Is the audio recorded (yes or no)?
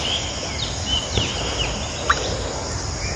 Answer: yes